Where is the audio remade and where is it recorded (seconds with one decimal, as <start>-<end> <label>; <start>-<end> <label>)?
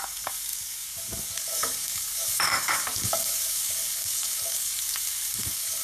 0.0-5.8 remade